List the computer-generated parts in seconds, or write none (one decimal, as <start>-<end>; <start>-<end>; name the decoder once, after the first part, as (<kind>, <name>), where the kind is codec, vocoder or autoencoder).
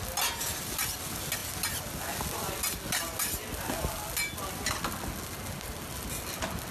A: none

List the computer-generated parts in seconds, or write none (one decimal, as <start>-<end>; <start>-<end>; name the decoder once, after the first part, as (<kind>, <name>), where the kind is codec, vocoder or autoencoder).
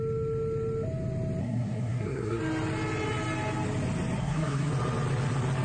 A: 1.4-2.4 (codec, SNAC); 4.2-4.7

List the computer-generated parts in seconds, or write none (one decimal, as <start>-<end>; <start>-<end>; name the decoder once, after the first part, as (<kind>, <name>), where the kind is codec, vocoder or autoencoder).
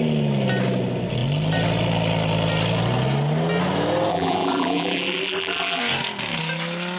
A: 4.1-5.8 (vocoder, BigVGAN v2)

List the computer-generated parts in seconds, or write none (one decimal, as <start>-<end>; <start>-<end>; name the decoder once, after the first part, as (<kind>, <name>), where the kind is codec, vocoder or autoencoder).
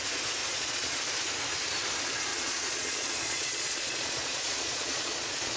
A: 0.4-1.0 (vocoder, Vocos); 2.3-5.6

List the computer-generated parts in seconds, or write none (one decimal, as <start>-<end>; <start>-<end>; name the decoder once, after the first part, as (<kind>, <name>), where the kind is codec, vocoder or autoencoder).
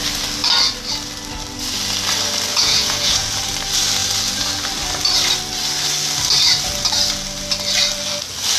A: 2.5-3.3 (vocoder, Vocos)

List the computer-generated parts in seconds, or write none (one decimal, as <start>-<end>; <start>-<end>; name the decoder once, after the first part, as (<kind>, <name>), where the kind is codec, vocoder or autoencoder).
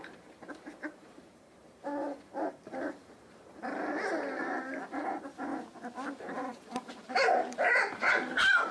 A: 0.0-5.5 (vocoder, BigVGAN v2); 6.1-8.7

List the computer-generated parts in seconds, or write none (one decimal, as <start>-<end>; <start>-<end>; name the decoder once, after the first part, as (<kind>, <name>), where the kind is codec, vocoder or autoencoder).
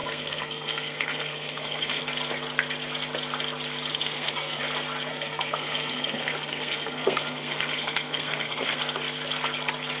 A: 0.0-2.0 (codec, SNAC); 3.9-4.6; 5.1-8.8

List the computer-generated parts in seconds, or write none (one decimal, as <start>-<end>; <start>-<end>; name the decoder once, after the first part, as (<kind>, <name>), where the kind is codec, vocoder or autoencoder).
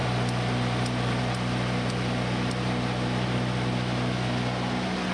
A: none